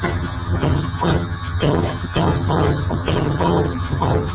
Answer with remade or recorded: remade